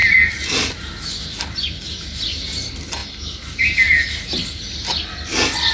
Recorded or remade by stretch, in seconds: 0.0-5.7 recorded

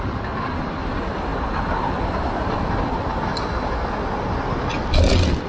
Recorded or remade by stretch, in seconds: 0.0-5.5 recorded